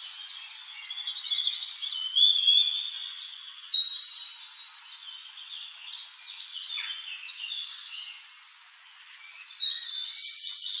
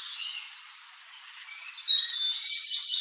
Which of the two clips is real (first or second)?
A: second